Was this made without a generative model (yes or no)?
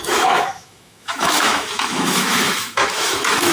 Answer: no